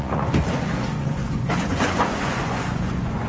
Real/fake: fake